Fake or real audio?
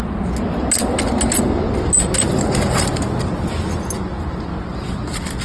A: real